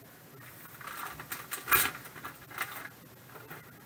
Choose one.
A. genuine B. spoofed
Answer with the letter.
A